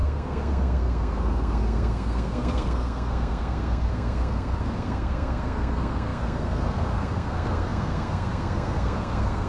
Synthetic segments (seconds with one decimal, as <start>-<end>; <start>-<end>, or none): 0.0-9.5

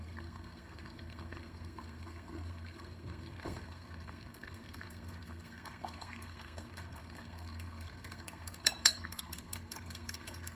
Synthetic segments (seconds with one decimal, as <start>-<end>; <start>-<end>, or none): 0.0-10.6

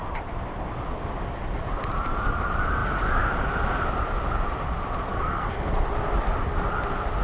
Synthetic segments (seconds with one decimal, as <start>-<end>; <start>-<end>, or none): 5.1-5.7

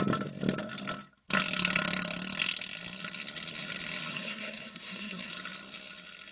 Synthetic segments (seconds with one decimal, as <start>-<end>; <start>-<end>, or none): 4.1-5.3

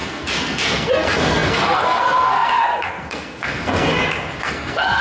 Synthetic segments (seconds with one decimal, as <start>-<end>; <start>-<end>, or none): 0.0-3.9; 4.4-5.0

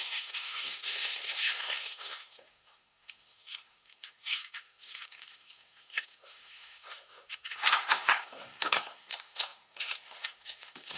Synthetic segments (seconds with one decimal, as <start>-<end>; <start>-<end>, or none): 0.0-11.0

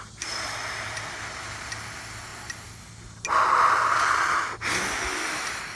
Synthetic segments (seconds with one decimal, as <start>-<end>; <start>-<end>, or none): none

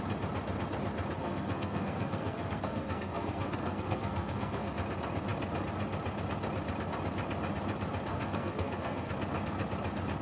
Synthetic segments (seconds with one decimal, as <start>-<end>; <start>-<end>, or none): 1.2-4.7; 8.1-9.1